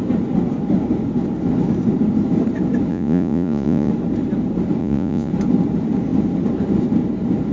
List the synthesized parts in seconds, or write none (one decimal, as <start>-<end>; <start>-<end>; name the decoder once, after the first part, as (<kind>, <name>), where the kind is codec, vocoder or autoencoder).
2.9-3.9 (vocoder, Vocos); 4.8-5.3